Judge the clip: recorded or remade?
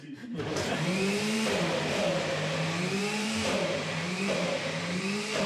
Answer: remade